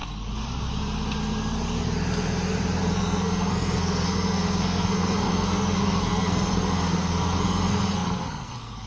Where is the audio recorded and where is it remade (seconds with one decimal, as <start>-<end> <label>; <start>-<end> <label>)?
0.0-2.8 recorded; 2.8-8.9 remade